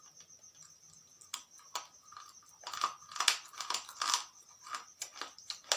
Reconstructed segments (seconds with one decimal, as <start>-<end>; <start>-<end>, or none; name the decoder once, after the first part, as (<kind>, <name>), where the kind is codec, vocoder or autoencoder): none